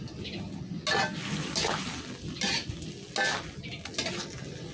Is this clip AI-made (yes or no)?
no